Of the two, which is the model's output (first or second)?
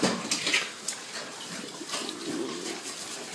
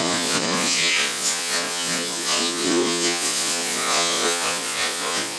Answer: second